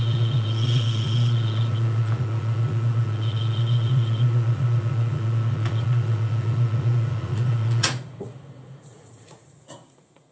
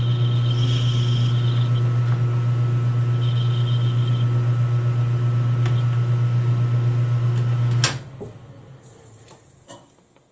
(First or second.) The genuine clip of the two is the second